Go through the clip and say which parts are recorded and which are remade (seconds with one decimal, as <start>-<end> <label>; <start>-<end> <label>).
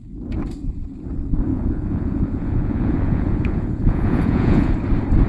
0.0-1.5 recorded; 1.5-4.7 remade; 4.7-5.3 recorded